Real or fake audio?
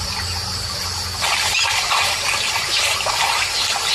real